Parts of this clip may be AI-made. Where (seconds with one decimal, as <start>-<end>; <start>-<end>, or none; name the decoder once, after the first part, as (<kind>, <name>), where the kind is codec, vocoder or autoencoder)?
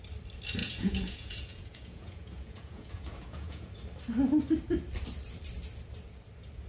0.6-3.7 (vocoder, Vocos)